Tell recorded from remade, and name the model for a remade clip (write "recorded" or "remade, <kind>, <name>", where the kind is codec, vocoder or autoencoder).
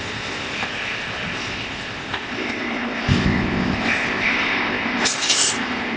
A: remade, codec, ZipCodec